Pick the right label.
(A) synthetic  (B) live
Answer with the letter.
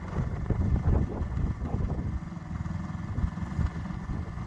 A